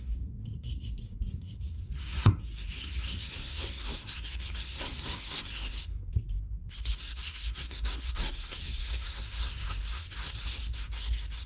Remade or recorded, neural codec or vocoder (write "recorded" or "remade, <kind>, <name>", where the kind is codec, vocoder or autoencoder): remade, codec, SNAC